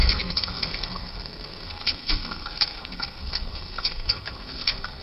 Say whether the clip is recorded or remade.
remade